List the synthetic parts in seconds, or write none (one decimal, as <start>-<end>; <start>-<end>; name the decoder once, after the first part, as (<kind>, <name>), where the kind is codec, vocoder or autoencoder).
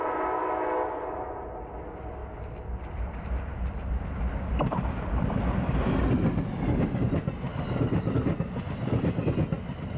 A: none